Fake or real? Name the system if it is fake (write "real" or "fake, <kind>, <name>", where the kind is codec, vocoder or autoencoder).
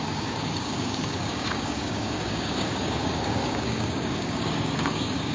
fake, codec, DAC